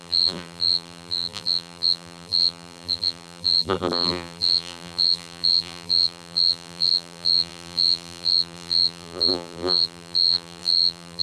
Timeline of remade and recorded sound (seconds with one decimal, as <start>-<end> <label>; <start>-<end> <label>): 0.0-11.2 remade